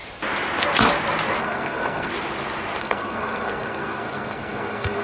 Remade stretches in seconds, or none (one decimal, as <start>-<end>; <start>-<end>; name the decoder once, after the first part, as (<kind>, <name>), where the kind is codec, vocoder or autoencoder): 1.4-2.1 (codec, SNAC); 2.8-5.0